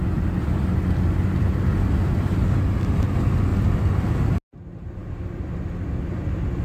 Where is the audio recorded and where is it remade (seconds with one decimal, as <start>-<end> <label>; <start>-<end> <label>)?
0.0-6.6 recorded